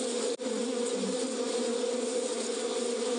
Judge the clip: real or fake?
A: real